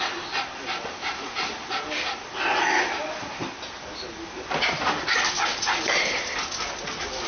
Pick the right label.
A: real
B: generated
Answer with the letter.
A